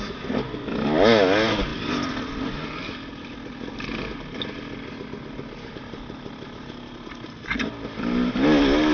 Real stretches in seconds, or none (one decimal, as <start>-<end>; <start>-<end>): 0.0-8.9

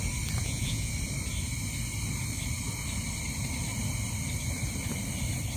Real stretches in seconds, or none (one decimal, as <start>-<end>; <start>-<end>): 0.0-0.4; 0.9-5.6